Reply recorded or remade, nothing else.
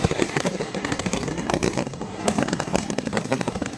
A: remade